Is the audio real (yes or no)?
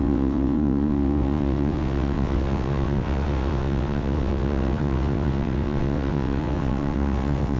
no